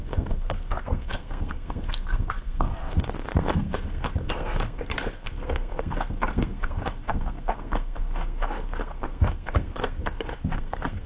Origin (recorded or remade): remade